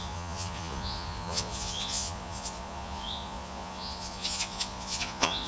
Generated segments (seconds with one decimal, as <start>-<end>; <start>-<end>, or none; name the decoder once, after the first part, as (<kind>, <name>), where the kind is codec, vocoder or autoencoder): 0.0-5.5 (vocoder, Vocos)